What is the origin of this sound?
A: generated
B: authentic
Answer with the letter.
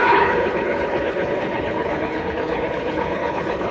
A